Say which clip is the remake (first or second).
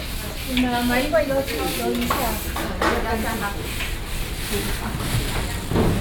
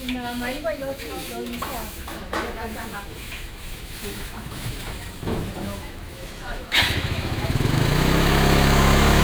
second